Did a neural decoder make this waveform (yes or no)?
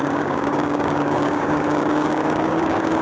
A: yes